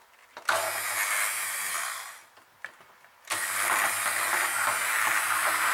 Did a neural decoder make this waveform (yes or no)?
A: no